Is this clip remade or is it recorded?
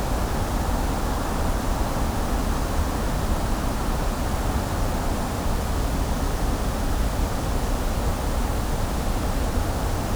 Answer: recorded